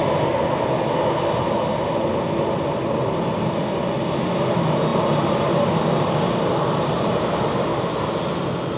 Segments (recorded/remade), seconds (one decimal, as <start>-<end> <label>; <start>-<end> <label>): 0.0-8.8 recorded